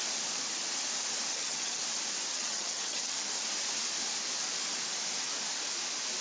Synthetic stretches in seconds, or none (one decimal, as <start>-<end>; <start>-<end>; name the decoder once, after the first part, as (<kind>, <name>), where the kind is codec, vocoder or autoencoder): 1.3-1.8 (vocoder, HiFi-GAN); 2.3-3.3